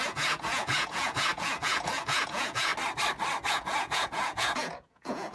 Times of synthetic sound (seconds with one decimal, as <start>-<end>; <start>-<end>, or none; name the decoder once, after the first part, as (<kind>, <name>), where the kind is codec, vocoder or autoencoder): 0.0-2.7 (vocoder, Vocos); 3.5-5.3